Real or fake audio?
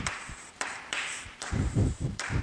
fake